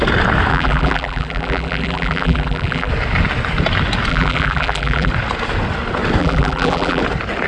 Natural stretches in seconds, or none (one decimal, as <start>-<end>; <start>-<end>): 0.0-0.5; 2.9-4.1; 5.1-6.2; 7.0-7.5